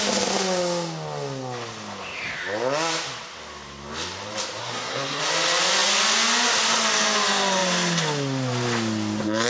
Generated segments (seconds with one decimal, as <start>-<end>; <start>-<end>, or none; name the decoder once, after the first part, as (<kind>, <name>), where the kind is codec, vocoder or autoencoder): 4.6-5.2 (codec, SNAC)